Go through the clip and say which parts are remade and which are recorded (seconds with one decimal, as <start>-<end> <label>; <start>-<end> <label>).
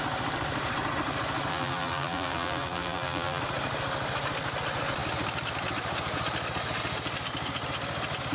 0.0-1.5 recorded; 1.5-3.4 remade; 3.4-8.3 recorded